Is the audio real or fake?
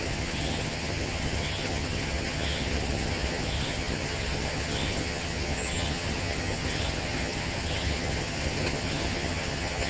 fake